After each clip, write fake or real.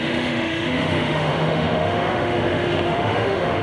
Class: fake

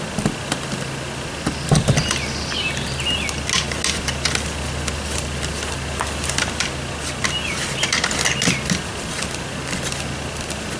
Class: real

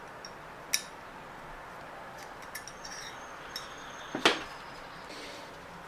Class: real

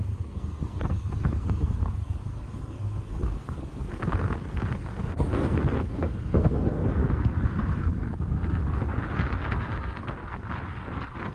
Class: fake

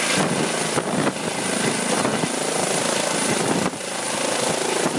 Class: real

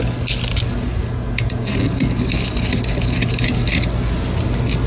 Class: real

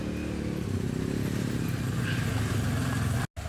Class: real